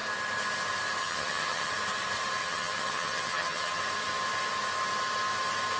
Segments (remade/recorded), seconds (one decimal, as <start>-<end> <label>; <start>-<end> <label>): 0.0-1.0 recorded; 1.0-1.7 remade; 1.7-2.4 recorded; 2.4-3.8 remade; 3.8-5.8 recorded